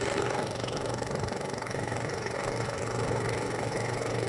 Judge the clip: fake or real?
fake